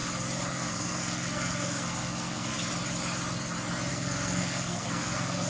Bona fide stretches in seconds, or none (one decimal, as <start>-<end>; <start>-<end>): 0.0-0.5; 2.5-3.9